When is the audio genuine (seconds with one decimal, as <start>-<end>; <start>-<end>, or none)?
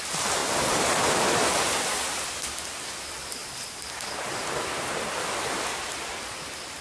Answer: 0.0-6.8